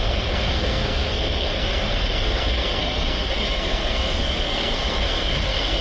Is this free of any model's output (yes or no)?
no